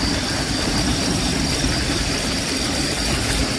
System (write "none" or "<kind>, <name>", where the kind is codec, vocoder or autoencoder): none